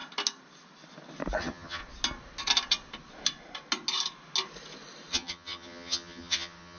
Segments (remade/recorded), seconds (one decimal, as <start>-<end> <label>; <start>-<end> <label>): 0.0-1.4 recorded; 1.4-1.8 remade; 1.8-5.1 recorded; 5.1-6.8 remade